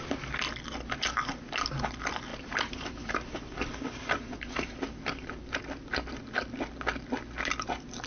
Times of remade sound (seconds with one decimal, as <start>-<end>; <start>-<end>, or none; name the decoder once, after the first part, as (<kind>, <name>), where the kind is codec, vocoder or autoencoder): 2.3-5.6 (vocoder, BigVGAN v2)